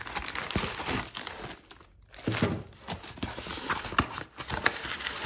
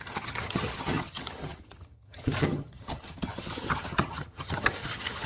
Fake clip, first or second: second